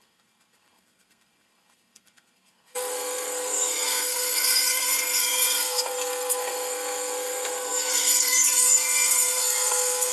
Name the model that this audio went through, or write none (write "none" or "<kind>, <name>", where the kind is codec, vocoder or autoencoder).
codec, SNAC